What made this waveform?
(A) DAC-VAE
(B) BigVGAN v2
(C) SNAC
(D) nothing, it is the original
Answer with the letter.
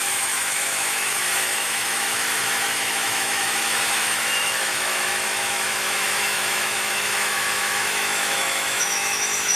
A